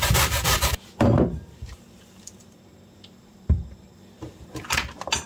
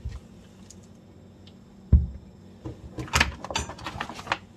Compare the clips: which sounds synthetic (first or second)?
first